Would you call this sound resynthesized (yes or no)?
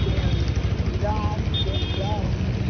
no